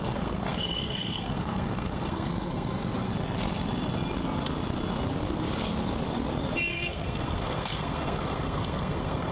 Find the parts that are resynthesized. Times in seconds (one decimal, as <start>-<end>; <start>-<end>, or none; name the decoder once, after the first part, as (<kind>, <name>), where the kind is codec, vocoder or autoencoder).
0.0-3.1 (codec, SNAC); 6.7-9.3